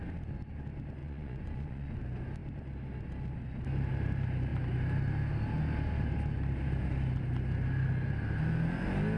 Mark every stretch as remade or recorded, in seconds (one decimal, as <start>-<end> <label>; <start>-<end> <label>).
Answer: 0.0-1.0 recorded; 1.0-2.0 remade; 2.0-9.2 recorded